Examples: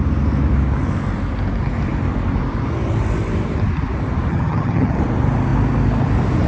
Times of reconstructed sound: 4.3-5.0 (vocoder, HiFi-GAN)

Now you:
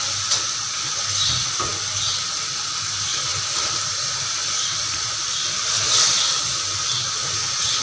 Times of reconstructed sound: none

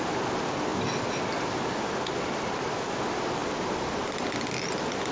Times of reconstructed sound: none

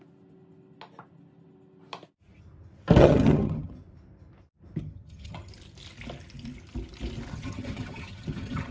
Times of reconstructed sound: 3.0-3.7 (vocoder, HiFi-GAN); 4.8-5.5; 7.3-8.7